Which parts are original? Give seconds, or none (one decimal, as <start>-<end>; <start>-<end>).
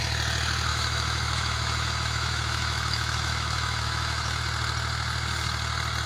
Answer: 0.0-0.7; 4.4-6.1